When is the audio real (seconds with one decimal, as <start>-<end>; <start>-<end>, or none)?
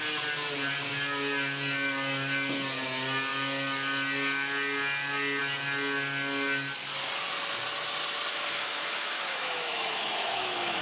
0.0-8.3